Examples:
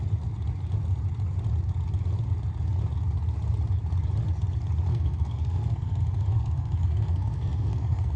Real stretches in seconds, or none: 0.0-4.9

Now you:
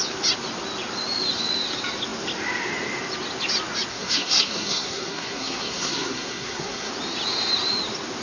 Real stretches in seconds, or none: 0.0-3.9; 6.9-8.2